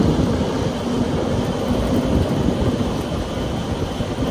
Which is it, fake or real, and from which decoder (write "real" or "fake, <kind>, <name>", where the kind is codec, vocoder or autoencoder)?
real